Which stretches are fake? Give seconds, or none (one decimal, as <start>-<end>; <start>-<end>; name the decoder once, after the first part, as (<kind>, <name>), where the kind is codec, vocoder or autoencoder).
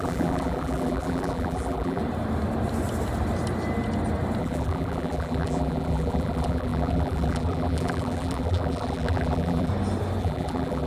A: 0.0-2.0 (vocoder, BigVGAN v2); 4.4-9.7; 10.2-10.9